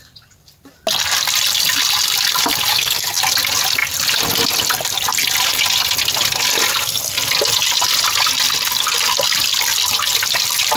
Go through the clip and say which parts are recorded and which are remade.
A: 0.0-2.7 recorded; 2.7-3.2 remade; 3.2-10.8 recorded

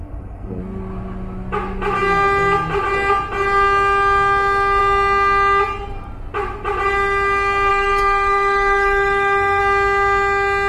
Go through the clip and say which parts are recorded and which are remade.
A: 0.0-0.6 remade; 0.6-7.7 recorded; 7.7-9.6 remade; 9.6-10.7 recorded

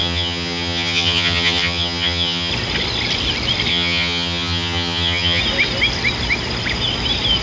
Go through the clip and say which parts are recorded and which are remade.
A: 0.0-2.5 remade; 2.5-3.7 recorded; 3.7-5.4 remade; 5.4-7.4 recorded

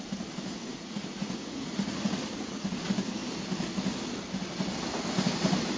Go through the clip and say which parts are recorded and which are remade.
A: 0.0-0.7 recorded; 0.7-2.7 remade; 2.7-5.8 recorded

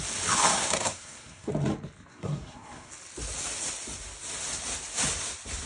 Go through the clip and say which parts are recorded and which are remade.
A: 0.0-0.5 recorded; 0.5-1.5 remade; 1.5-2.1 recorded; 2.1-2.9 remade; 2.9-5.7 recorded

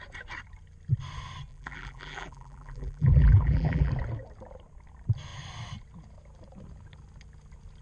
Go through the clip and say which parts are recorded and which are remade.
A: 0.0-1.5 recorded; 1.5-3.9 remade; 3.9-7.8 recorded